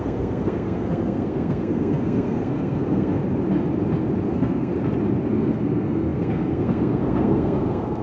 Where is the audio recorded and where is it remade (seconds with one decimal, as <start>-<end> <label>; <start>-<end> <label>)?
0.0-3.2 remade; 3.2-4.3 recorded; 4.3-4.7 remade; 4.7-5.3 recorded; 5.3-8.0 remade